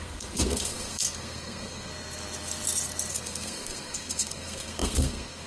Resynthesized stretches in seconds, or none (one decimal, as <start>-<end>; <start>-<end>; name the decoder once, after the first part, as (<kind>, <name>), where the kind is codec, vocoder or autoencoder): 0.0-1.9 (codec, SNAC); 3.1-5.5